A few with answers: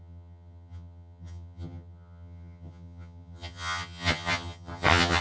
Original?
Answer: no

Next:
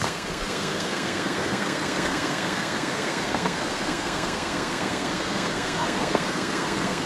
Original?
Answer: no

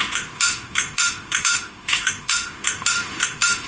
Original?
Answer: no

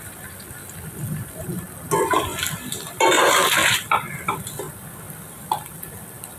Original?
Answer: yes